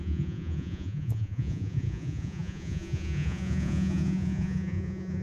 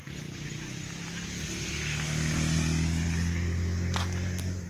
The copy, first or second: first